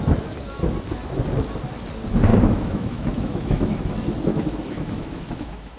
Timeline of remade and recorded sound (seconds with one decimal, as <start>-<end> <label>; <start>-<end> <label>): 0.0-2.3 recorded; 2.3-3.9 remade; 3.9-4.3 recorded; 4.3-5.8 remade